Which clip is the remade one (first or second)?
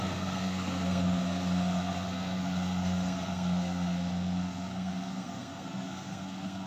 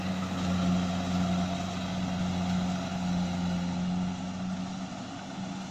first